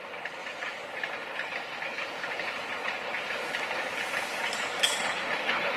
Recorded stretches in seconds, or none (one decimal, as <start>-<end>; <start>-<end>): 0.0-5.8